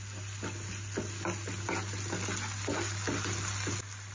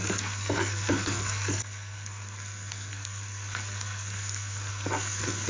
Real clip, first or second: first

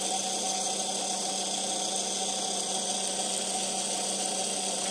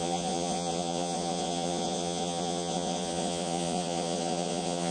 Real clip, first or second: first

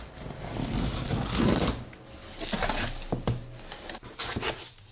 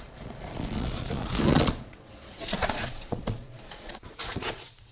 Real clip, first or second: first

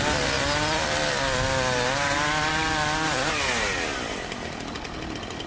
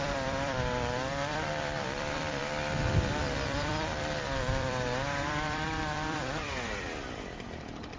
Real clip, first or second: first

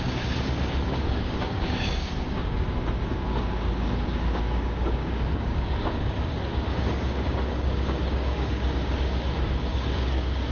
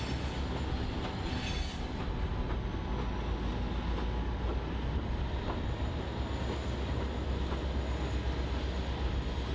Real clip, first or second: second